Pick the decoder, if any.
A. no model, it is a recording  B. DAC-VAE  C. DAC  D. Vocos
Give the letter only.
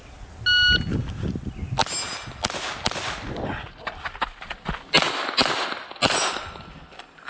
A